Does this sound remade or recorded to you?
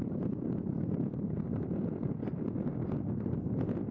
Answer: recorded